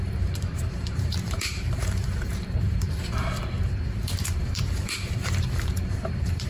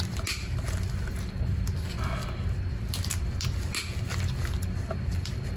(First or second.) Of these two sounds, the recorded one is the second